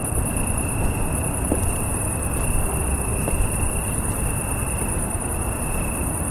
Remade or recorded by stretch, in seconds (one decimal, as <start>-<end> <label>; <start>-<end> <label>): 0.0-6.3 remade